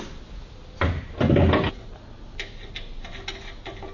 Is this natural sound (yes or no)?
yes